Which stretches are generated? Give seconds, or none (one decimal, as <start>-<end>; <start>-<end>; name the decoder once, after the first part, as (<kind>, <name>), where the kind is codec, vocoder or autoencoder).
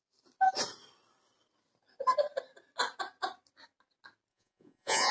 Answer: 4.3-5.1 (vocoder, Vocos)